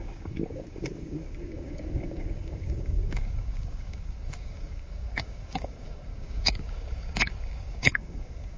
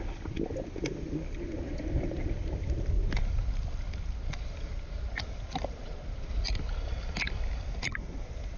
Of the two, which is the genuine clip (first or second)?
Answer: second